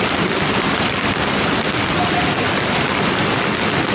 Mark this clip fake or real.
real